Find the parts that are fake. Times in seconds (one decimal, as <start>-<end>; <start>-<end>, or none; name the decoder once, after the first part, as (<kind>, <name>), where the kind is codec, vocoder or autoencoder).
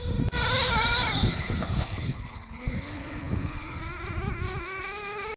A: 1.2-3.8 (codec, HILCodec)